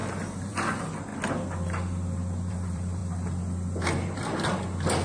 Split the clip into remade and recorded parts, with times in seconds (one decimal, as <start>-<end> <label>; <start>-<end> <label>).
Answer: 0.0-0.5 recorded; 0.5-1.1 remade; 1.1-2.5 recorded; 2.5-3.0 remade; 3.0-5.0 recorded